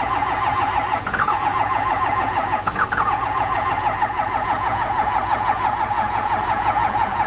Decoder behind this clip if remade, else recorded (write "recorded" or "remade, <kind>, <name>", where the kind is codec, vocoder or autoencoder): remade, vocoder, Vocos